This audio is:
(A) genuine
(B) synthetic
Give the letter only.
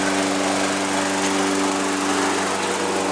A